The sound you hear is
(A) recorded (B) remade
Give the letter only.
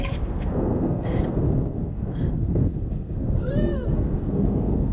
B